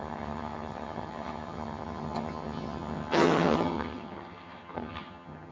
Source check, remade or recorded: remade